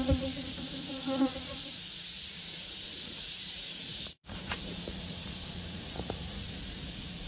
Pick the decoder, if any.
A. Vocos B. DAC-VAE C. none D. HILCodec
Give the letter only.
A